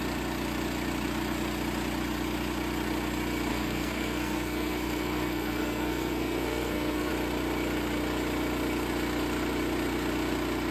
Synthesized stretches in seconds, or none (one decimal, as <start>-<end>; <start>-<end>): 3.5-7.1